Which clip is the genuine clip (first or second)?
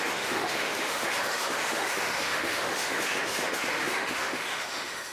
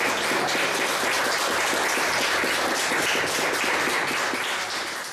second